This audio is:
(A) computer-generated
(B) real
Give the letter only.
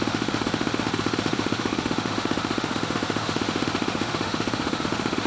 A